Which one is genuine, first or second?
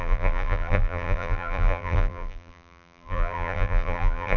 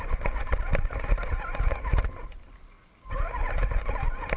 second